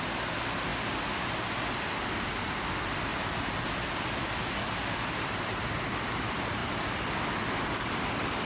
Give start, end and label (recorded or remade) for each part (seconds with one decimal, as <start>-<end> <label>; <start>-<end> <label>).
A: 0.0-8.4 recorded